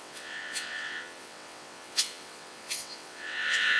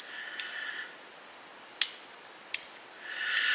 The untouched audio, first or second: second